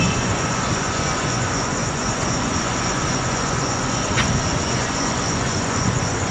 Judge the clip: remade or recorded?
remade